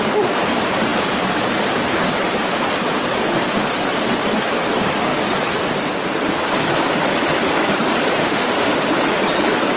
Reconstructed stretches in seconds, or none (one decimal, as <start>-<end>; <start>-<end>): 8.2-8.7